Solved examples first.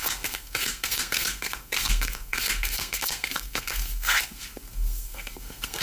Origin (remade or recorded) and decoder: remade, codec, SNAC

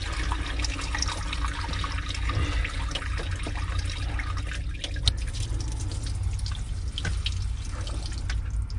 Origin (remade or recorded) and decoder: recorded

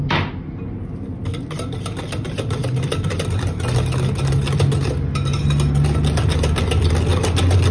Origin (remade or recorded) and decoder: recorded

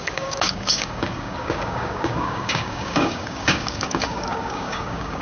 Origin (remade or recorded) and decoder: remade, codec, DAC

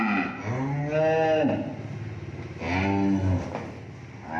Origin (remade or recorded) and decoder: recorded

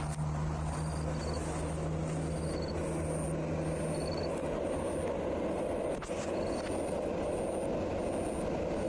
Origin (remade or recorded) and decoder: recorded